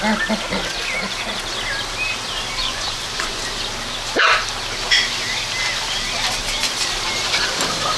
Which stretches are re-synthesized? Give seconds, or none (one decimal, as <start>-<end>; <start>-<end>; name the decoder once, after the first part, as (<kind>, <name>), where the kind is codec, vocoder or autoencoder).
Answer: 2.6-3.4 (vocoder, Vocos)